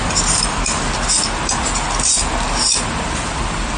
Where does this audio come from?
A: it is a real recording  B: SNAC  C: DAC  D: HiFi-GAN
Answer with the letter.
A